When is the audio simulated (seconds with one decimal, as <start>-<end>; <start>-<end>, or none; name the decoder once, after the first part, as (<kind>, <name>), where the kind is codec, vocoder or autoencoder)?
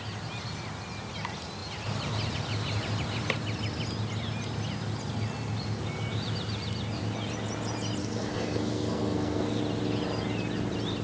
8.0-9.6 (codec, SNAC)